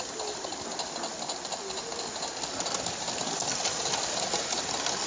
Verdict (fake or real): real